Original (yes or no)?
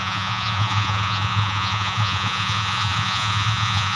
no